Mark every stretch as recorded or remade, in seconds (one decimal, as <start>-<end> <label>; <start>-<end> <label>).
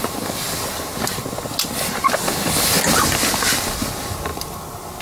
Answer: 0.0-5.0 recorded